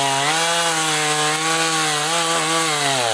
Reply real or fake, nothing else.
real